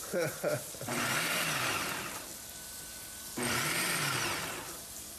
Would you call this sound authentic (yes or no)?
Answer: no